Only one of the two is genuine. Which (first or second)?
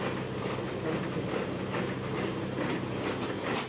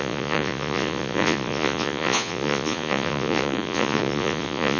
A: first